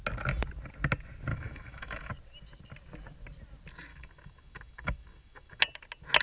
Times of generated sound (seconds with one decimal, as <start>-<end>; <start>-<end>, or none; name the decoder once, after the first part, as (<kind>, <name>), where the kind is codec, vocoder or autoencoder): 1.3-2.1 (autoencoder, DAC-VAE); 3.9-5.6